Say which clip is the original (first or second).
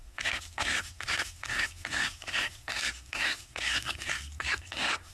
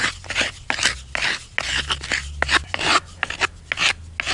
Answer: second